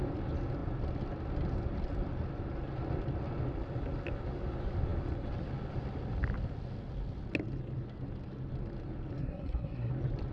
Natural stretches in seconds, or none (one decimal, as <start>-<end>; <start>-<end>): 0.0-9.2; 9.9-10.3